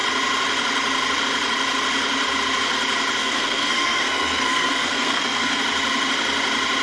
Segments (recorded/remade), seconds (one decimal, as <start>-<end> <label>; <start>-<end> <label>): 0.0-3.2 recorded; 3.2-5.6 remade; 5.6-6.8 recorded